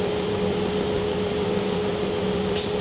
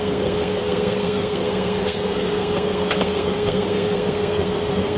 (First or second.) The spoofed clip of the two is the second